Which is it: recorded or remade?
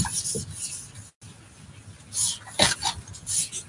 recorded